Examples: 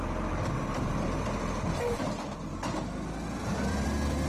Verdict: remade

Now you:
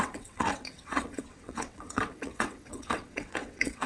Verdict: remade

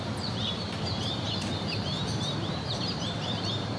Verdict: remade